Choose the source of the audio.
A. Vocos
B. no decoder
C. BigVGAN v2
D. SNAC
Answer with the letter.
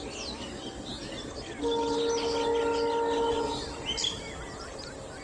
B